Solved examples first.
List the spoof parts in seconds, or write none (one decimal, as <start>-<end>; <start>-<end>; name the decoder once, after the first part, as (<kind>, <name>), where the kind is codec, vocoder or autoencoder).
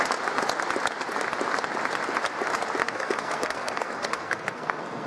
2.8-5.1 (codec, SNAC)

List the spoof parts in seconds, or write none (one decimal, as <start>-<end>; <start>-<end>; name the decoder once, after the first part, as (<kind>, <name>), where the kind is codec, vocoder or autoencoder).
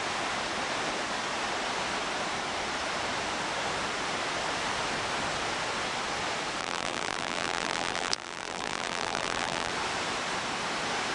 6.6-9.7 (vocoder, BigVGAN v2)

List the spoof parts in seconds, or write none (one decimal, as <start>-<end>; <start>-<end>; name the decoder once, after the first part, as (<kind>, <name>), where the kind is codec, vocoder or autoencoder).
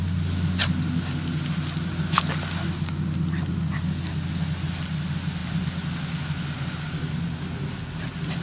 none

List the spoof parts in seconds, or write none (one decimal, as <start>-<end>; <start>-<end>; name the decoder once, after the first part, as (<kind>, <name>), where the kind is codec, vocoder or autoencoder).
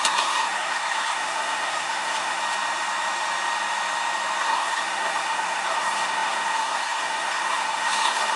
0.0-2.4 (codec, SNAC); 4.4-8.4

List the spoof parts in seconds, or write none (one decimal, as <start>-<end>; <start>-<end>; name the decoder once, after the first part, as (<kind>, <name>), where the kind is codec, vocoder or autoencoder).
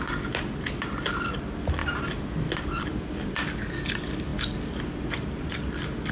none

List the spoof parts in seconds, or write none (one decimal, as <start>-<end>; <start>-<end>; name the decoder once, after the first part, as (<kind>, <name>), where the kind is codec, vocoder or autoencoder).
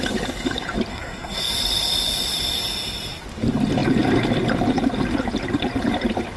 0.9-1.5 (codec, SNAC)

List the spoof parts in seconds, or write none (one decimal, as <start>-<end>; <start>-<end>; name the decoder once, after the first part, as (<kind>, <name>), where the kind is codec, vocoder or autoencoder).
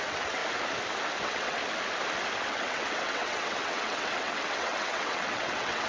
0.0-0.4 (vocoder, WaveNeXt); 1.2-1.6; 2.4-5.9